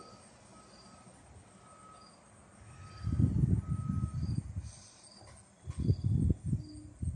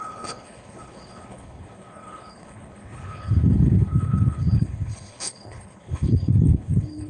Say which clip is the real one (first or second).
first